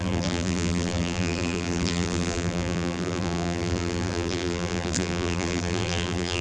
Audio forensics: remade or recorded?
remade